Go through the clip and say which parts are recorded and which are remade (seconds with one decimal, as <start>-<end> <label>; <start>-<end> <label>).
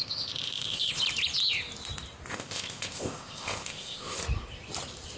0.0-0.9 remade; 0.9-2.3 recorded; 2.3-4.2 remade; 4.2-5.2 recorded